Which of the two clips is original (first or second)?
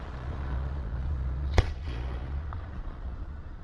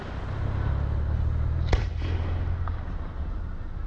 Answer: second